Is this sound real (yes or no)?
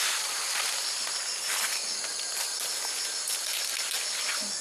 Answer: yes